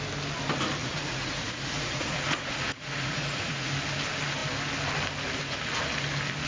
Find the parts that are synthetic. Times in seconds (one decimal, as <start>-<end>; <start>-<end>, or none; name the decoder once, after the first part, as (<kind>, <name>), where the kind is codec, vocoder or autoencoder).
0.8-3.7 (vocoder, Vocos)